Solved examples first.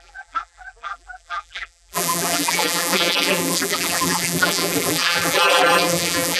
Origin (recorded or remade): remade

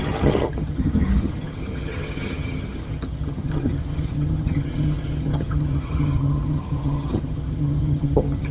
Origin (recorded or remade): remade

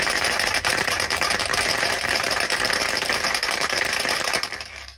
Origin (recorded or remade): remade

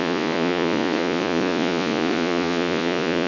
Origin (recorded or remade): remade